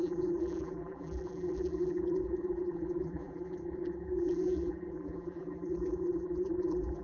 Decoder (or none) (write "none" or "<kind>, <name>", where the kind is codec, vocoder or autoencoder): vocoder, BigVGAN v2